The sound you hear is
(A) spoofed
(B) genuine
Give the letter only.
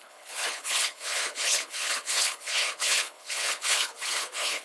A